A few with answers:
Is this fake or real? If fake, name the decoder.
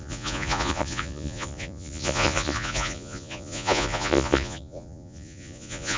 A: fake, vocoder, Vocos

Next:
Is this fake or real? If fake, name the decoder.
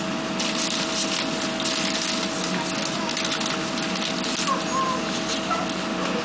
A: real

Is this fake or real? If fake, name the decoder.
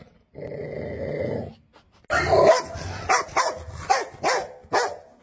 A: real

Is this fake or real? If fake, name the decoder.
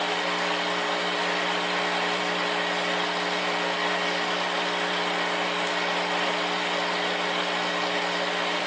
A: real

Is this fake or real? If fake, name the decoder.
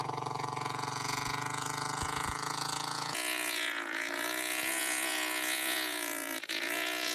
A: fake, vocoder, Vocos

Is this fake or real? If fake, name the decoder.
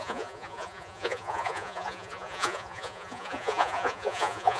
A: fake, vocoder, Vocos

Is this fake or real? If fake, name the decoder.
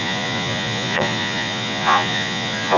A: fake, vocoder, Vocos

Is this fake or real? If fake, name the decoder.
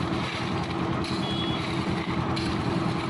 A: real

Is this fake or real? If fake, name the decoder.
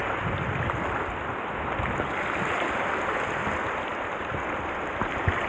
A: real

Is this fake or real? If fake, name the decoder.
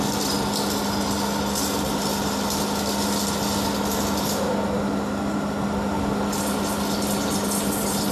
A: real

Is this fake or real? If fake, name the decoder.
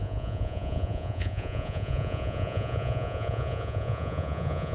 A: fake, vocoder, Vocos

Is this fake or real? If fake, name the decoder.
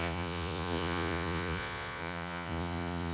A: fake, vocoder, Vocos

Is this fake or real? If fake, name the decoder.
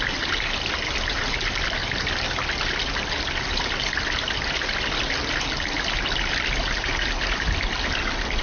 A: real